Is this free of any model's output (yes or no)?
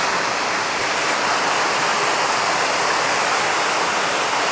yes